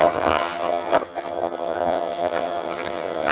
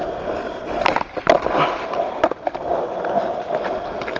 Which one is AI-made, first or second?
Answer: first